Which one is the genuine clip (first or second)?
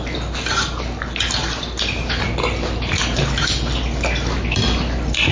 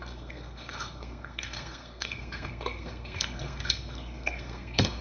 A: first